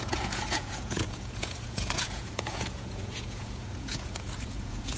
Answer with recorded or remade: remade